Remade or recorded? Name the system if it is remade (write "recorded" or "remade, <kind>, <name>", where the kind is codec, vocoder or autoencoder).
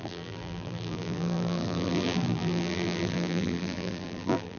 remade, vocoder, BigVGAN v2